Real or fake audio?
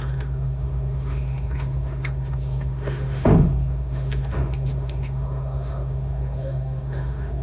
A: fake